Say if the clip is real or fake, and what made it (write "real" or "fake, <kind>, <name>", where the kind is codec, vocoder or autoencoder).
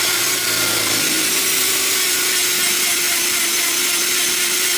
real